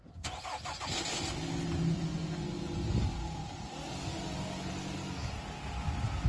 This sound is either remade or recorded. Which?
recorded